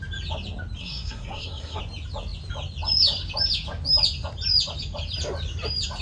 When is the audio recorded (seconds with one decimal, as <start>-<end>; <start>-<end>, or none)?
0.0-0.8; 1.8-6.0